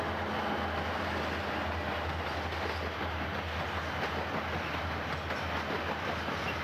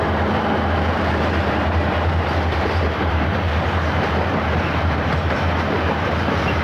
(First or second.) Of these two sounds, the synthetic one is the second